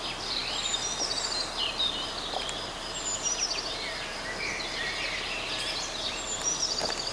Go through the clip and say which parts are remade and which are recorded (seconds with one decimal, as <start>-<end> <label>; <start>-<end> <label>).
0.0-7.1 recorded